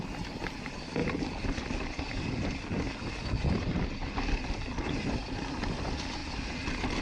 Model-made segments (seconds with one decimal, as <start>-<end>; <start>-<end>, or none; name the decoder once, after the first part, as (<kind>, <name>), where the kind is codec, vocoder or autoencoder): none